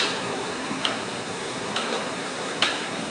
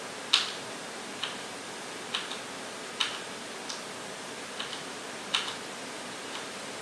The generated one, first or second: first